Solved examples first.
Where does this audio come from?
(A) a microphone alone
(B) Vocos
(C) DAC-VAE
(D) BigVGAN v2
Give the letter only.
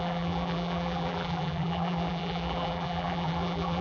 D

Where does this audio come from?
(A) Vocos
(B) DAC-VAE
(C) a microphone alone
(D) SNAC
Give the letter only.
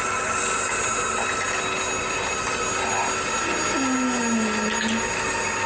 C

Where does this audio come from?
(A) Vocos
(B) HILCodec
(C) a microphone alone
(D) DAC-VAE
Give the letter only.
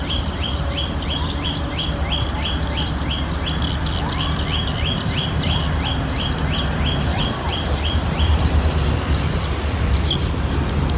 C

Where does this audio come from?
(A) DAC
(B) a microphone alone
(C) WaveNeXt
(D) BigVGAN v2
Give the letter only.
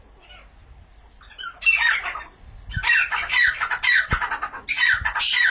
B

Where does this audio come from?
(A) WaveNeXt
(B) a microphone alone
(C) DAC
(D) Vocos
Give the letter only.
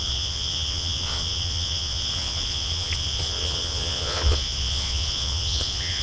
D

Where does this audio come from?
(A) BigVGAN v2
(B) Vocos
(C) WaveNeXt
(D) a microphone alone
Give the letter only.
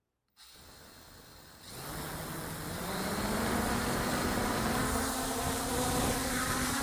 D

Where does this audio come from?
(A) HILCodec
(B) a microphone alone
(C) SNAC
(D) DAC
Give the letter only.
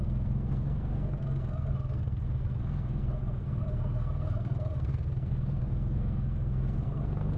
C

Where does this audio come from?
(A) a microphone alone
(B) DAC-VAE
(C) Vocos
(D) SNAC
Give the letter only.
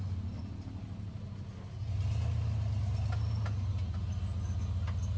A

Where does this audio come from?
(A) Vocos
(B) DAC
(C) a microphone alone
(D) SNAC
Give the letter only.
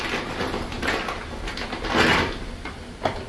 C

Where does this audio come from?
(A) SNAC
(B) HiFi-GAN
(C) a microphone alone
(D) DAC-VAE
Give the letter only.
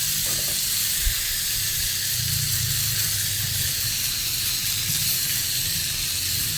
C